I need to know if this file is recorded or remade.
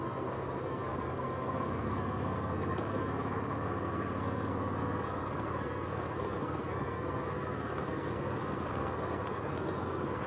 remade